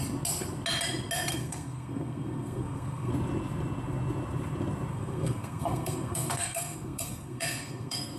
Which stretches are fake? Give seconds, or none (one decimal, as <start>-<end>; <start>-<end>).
1.3-3.1; 4.9-8.2